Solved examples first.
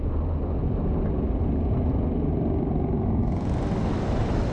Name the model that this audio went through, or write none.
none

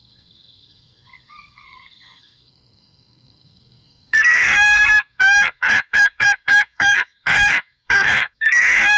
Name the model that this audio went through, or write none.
codec, SNAC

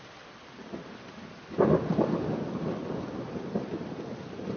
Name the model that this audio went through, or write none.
none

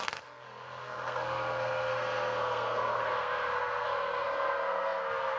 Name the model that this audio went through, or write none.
codec, SNAC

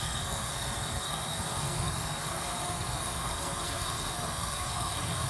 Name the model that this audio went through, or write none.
codec, SNAC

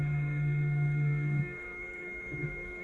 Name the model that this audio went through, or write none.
codec, SNAC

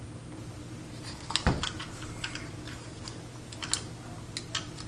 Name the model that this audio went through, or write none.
none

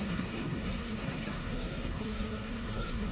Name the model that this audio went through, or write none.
codec, SNAC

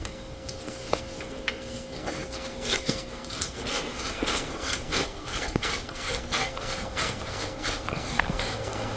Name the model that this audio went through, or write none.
codec, SNAC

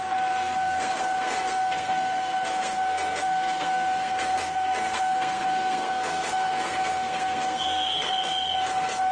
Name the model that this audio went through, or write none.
codec, SNAC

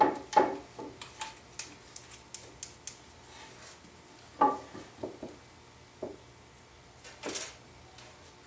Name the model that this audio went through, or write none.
none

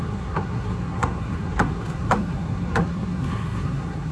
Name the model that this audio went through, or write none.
codec, SNAC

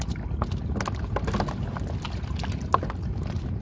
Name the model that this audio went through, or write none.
none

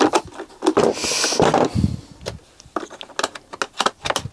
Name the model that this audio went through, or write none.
none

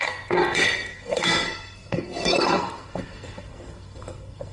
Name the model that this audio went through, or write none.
codec, SNAC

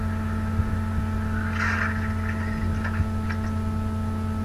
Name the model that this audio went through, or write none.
none